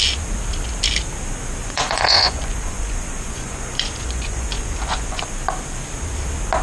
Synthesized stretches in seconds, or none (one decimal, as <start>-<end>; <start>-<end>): 1.6-5.2